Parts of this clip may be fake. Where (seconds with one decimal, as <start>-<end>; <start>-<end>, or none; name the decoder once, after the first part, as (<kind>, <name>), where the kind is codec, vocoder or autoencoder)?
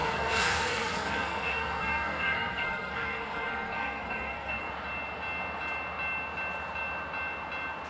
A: 0.0-4.7 (codec, SNAC)